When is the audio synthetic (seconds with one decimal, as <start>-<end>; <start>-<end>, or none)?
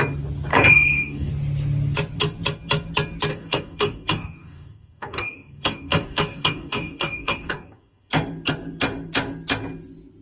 0.5-1.3; 3.3-8.1